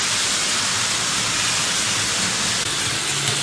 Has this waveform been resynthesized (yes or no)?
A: no